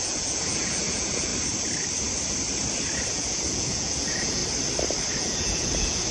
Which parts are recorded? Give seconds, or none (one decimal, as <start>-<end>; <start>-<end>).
1.3-3.1; 4.4-5.1